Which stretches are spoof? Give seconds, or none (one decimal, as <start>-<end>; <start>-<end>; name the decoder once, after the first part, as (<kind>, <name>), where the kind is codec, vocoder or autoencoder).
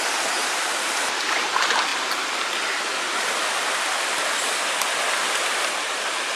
0.4-1.5 (vocoder, BigVGAN v2)